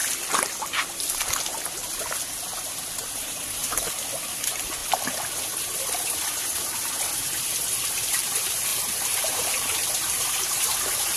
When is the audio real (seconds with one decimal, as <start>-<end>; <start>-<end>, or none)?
0.0-3.1; 3.6-4.2; 4.8-7.8